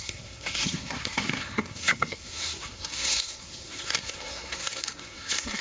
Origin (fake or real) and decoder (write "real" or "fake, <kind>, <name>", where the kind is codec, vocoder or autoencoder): fake, codec, SNAC